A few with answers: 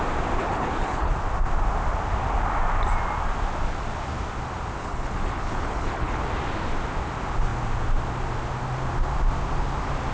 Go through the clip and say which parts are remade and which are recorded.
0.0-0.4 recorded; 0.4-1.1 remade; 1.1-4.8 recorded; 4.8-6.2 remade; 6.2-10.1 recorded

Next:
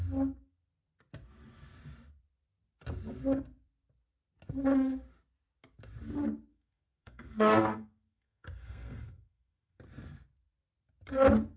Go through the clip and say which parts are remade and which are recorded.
0.0-6.5 recorded; 6.5-9.8 remade; 9.8-11.6 recorded

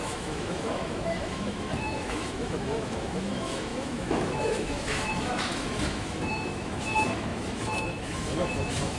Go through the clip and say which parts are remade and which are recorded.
0.0-9.0 remade

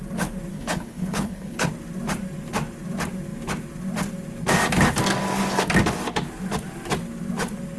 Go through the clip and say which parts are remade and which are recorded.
0.0-0.5 recorded; 0.5-1.7 remade; 1.7-7.8 recorded

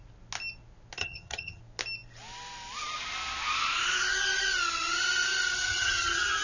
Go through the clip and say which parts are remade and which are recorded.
0.0-1.0 recorded; 1.0-1.6 remade; 1.6-5.5 recorded; 5.5-6.4 remade

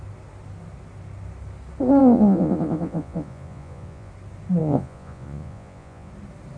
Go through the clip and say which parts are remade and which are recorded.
0.0-2.0 recorded; 2.0-4.1 remade; 4.1-4.6 recorded; 4.6-6.1 remade; 6.1-6.6 recorded

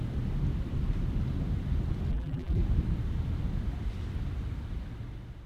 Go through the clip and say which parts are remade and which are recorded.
0.0-2.1 recorded; 2.1-2.6 remade; 2.6-5.5 recorded